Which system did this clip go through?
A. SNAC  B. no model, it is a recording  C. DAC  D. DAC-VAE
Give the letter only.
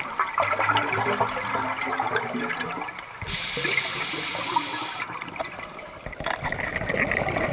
B